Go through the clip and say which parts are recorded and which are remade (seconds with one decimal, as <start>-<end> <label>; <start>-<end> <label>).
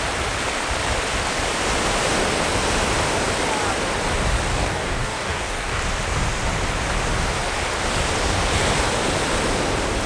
0.0-4.5 recorded; 4.5-5.8 remade; 5.8-10.1 recorded